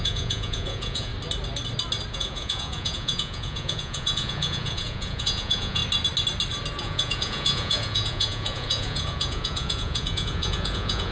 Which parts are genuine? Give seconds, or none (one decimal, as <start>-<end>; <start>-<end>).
1.1-2.1; 5.8-6.8